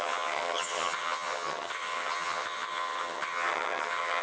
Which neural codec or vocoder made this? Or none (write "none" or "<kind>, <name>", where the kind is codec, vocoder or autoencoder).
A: vocoder, HiFi-GAN